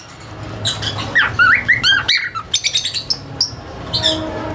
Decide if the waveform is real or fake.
real